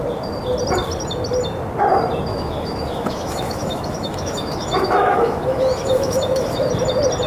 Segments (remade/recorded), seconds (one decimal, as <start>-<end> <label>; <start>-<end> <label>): 0.0-2.3 recorded; 2.3-6.7 remade; 6.7-7.3 recorded